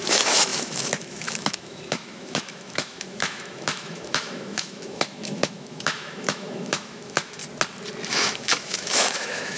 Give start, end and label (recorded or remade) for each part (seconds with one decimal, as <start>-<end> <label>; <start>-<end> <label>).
0.0-7.4 remade; 7.4-8.1 recorded; 8.1-9.6 remade